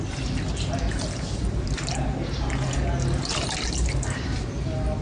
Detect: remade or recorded recorded